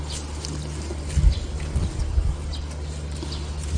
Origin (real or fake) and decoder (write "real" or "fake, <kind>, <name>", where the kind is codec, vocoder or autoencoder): real